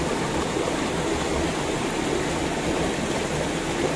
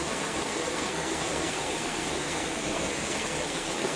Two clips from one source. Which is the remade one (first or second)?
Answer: second